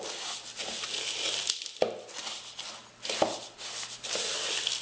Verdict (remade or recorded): recorded